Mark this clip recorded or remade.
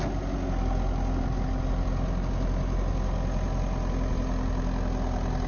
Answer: recorded